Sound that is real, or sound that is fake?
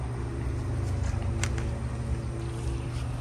real